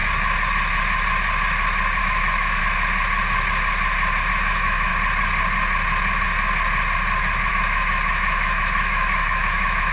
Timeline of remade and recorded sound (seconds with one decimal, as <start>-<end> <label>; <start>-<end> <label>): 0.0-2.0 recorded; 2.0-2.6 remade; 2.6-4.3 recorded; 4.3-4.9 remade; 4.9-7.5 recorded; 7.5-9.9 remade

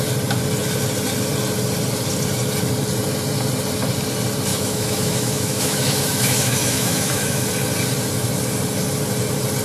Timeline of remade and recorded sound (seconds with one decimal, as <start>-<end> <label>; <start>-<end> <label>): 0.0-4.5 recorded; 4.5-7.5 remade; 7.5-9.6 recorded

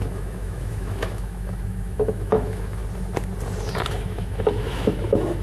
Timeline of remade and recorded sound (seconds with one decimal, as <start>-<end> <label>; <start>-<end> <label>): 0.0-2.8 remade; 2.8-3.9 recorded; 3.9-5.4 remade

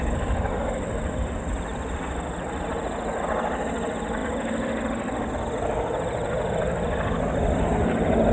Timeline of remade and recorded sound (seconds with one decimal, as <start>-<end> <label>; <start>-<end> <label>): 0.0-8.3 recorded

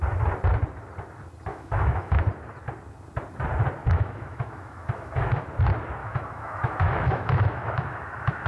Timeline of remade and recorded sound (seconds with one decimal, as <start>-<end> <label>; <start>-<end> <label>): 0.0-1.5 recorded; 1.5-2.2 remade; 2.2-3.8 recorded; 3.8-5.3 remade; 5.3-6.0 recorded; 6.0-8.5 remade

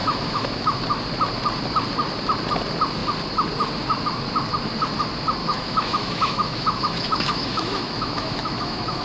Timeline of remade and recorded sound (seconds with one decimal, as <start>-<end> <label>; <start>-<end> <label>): 0.0-0.8 remade; 0.8-5.4 recorded; 5.4-9.0 remade